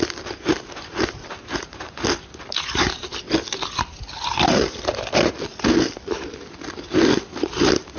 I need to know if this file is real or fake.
fake